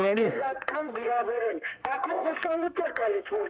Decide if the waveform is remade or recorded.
remade